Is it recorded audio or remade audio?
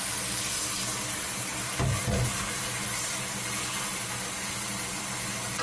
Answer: recorded